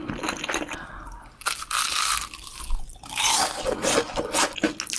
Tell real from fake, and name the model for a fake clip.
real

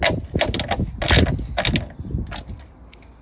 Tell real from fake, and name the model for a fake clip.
real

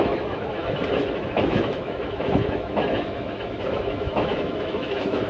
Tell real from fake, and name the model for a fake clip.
fake, autoencoder, DAC-VAE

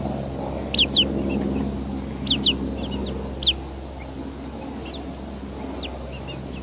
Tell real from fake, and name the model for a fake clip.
real